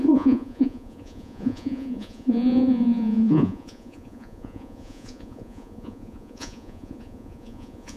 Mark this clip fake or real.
fake